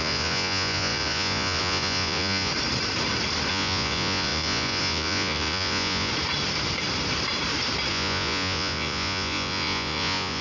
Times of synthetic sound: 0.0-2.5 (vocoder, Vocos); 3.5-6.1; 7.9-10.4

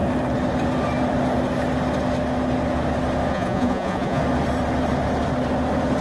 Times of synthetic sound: 3.3-4.2 (vocoder, Vocos)

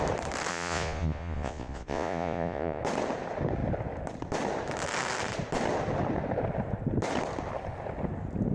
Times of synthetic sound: 0.5-2.8 (vocoder, Vocos)

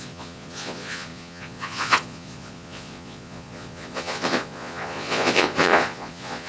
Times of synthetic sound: 0.0-6.5 (vocoder, Vocos)

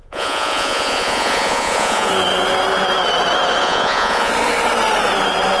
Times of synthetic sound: 0.0-2.1 (vocoder, Vocos); 3.6-4.3